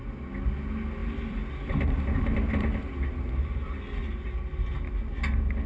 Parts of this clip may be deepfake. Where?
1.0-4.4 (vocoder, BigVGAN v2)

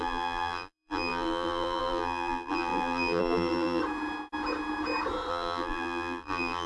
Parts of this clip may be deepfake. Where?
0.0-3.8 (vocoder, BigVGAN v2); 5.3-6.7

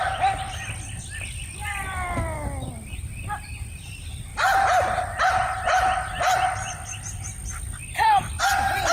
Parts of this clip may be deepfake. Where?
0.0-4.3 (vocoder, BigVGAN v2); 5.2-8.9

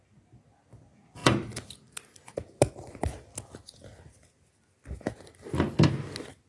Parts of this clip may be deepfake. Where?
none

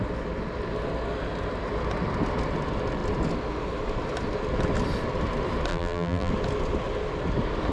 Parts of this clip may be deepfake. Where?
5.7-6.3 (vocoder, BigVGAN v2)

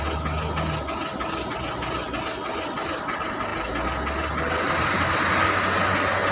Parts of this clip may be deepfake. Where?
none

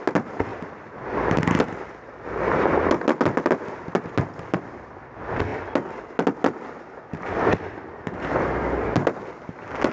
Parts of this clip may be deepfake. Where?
none